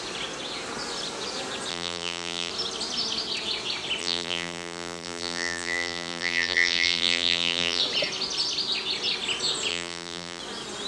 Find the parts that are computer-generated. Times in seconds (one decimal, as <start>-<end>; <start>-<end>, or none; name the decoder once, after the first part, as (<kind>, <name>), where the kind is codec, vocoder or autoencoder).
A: 1.7-2.5 (vocoder, BigVGAN v2); 4.0-7.8; 9.7-10.4